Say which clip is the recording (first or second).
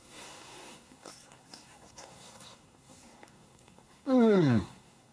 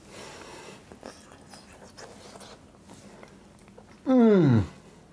second